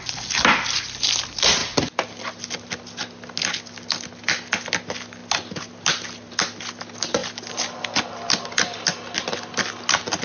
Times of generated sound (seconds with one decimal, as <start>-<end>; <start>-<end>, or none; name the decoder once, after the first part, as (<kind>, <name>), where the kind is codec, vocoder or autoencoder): none